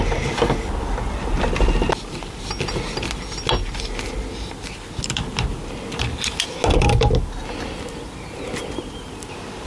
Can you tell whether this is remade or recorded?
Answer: recorded